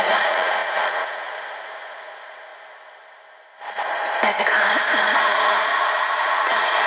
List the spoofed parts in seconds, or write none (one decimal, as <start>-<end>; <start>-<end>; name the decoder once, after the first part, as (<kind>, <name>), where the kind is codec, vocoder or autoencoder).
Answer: 0.0-2.5 (vocoder, Vocos); 5.2-5.7; 6.2-6.9